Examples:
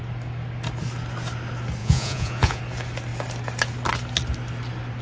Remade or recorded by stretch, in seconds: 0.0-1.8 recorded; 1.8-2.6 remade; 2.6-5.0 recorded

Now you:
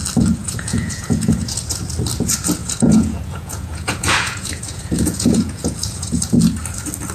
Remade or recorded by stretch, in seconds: 0.0-0.4 recorded; 0.4-1.8 remade; 1.8-2.6 recorded; 2.6-6.4 remade; 6.4-7.1 recorded